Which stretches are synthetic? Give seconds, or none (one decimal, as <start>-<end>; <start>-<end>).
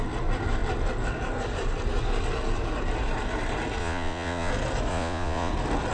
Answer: 3.8-4.5; 4.9-5.5